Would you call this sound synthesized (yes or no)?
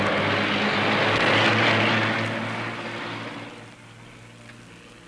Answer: no